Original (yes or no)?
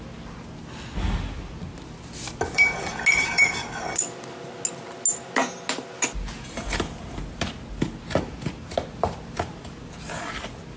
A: yes